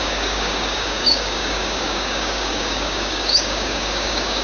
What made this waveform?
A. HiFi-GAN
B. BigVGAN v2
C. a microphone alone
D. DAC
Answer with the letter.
D